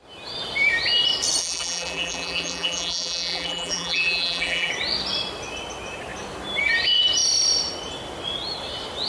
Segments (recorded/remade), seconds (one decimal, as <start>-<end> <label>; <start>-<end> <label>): 0.0-1.4 recorded; 1.4-4.7 remade; 4.7-9.1 recorded